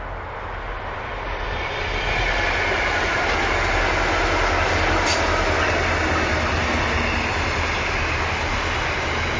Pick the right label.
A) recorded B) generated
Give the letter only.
A